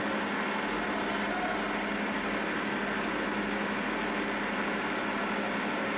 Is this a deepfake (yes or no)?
no